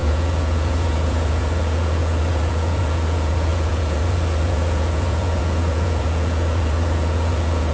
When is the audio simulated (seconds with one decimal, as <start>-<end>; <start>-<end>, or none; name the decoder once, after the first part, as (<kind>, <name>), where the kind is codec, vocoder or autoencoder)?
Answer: 0.0-7.7 (vocoder, Vocos)